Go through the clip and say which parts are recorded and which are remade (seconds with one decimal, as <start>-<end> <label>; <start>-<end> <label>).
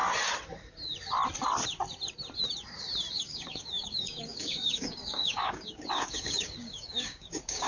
0.0-3.1 recorded; 3.1-7.7 remade